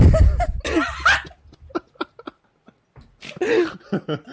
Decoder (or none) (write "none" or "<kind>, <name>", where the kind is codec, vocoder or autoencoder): none